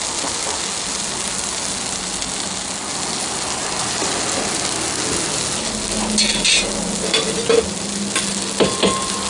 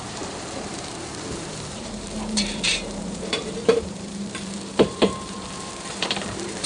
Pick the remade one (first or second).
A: second